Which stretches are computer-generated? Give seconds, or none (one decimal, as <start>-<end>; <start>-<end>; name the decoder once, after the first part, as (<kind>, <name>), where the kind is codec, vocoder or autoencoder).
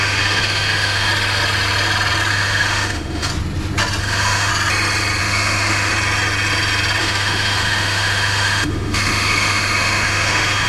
0.0-1.1 (autoencoder, DAC-VAE); 2.3-3.3; 4.0-4.5; 5.2-5.9; 7.0-10.7